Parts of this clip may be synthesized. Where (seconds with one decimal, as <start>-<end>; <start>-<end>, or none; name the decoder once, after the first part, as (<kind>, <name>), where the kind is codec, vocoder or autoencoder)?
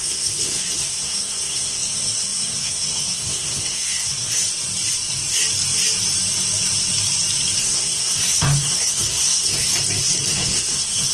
0.0-4.4 (codec, SNAC); 7.6-9.7; 10.3-11.1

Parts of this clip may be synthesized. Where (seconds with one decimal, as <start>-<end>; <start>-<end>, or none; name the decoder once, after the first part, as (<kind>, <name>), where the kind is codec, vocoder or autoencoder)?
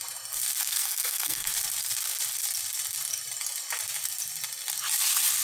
0.6-1.5 (codec, SNAC)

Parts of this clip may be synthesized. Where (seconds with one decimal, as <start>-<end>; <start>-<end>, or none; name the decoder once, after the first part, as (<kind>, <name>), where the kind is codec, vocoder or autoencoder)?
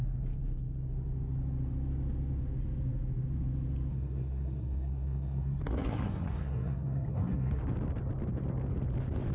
3.9-7.6 (codec, SNAC)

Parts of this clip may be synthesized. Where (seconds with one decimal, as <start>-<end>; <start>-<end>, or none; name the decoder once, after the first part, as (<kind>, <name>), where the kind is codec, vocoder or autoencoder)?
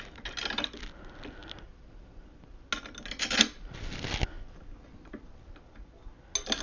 none